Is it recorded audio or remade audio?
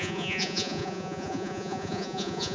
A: remade